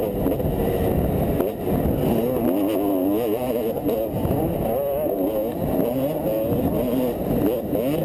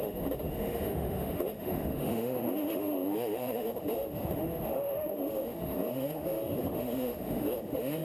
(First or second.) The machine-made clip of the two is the second